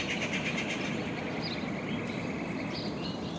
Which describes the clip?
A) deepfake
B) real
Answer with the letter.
B